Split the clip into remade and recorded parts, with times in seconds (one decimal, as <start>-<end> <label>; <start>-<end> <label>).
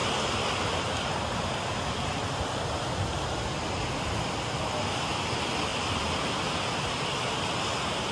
0.0-8.1 recorded